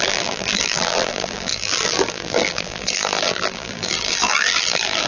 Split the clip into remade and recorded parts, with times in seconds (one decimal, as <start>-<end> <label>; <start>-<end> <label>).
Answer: 0.0-5.1 remade